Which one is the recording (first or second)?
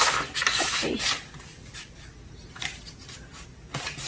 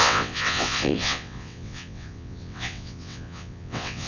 first